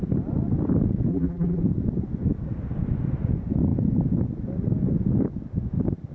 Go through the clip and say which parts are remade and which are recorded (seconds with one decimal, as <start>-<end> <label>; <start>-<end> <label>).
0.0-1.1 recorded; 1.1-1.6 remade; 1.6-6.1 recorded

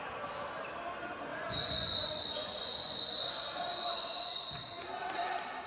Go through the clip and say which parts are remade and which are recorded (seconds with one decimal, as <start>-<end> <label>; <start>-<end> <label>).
0.0-1.3 recorded; 1.3-4.7 remade; 4.7-5.7 recorded

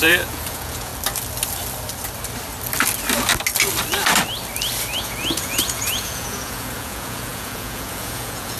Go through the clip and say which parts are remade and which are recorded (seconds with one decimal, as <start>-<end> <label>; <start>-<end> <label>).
0.0-0.9 remade; 0.9-5.0 recorded; 5.0-8.6 remade

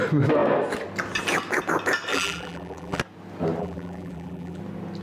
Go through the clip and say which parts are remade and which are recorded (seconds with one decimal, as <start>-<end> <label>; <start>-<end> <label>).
0.0-2.1 recorded; 2.1-3.0 remade; 3.0-3.6 recorded; 3.6-4.6 remade; 4.6-5.0 recorded

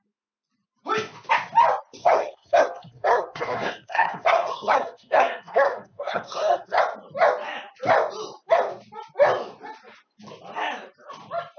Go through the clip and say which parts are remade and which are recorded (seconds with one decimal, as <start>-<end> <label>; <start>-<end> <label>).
0.0-2.0 recorded; 2.0-6.8 remade; 6.8-11.6 recorded